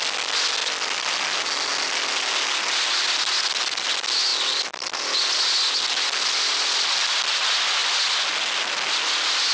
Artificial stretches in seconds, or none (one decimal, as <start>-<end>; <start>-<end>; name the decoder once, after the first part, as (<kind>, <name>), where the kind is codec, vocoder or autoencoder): none